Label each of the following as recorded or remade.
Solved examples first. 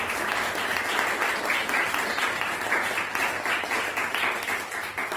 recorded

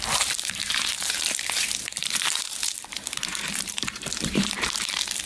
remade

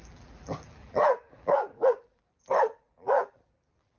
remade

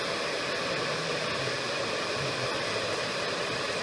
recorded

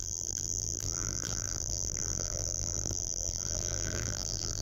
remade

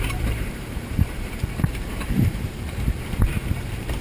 remade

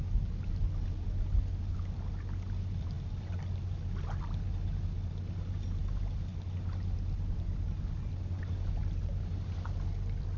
recorded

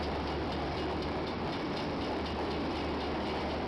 remade